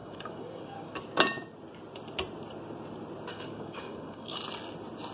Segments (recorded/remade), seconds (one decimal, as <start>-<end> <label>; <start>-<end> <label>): 0.0-1.0 remade; 1.0-3.3 recorded; 3.3-4.4 remade; 4.4-5.1 recorded